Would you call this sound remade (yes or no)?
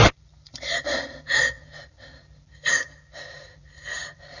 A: no